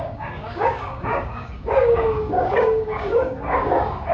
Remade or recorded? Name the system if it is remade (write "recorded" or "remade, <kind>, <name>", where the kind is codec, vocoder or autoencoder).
remade, codec, DAC